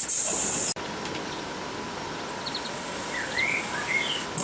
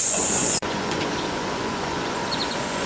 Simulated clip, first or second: second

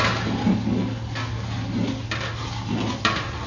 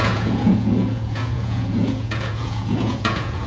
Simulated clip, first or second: second